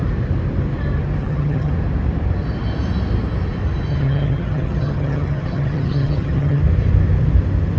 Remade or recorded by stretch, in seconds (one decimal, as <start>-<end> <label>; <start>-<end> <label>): 0.0-1.2 recorded; 1.2-1.7 remade; 1.7-3.9 recorded; 3.9-6.6 remade; 6.6-7.8 recorded